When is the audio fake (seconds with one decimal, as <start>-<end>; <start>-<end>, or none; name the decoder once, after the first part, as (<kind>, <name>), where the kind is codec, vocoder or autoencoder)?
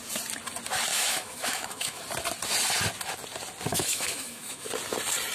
0.9-2.0 (autoencoder, DAC-VAE); 3.7-4.7